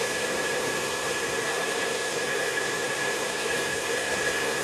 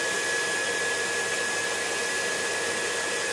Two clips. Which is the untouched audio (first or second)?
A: second